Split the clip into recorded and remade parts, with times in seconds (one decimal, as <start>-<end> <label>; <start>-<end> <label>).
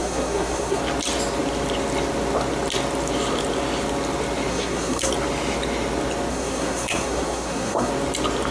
0.0-0.8 remade; 0.8-4.5 recorded; 4.5-5.1 remade; 5.1-6.3 recorded; 6.3-7.9 remade; 7.9-8.5 recorded